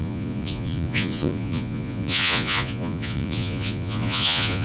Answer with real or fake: fake